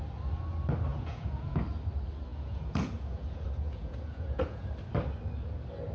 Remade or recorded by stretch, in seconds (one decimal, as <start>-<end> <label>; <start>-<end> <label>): 0.0-0.9 recorded; 0.9-1.6 remade; 1.6-2.3 recorded; 2.3-4.7 remade; 4.7-5.9 recorded